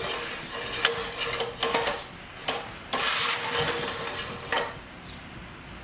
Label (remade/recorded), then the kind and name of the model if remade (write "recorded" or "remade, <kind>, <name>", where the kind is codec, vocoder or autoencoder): recorded